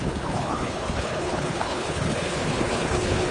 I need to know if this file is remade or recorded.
remade